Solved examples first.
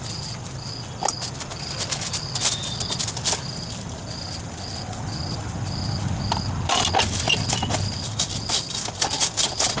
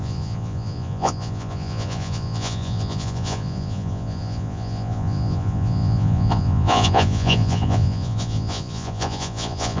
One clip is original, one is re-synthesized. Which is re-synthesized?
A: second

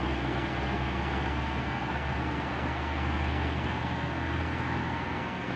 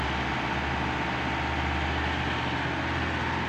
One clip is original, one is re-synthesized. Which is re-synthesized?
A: first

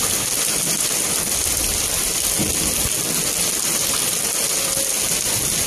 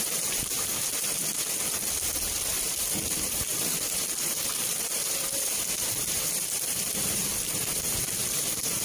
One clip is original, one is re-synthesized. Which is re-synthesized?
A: second